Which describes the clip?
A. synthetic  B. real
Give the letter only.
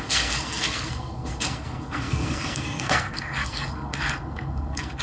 A